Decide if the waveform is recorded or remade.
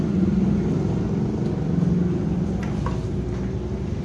recorded